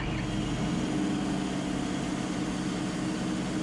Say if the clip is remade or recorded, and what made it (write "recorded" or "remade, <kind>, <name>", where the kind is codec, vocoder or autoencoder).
recorded